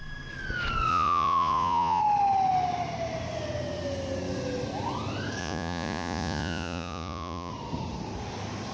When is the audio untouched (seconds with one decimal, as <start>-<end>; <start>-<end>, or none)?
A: 0.0-0.9; 2.0-5.4; 7.5-8.7